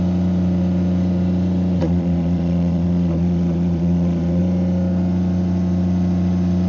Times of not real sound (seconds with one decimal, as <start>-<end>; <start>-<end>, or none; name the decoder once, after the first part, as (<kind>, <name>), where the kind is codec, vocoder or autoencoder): 1.8-4.4 (vocoder, Vocos)